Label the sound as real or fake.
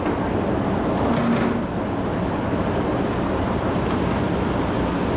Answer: real